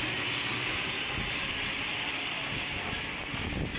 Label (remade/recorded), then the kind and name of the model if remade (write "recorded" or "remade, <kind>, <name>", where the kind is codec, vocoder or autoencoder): recorded